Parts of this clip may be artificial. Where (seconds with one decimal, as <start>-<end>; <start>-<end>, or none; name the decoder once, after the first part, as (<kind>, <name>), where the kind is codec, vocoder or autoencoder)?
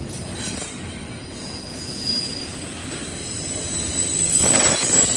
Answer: 1.3-2.4 (vocoder, Vocos)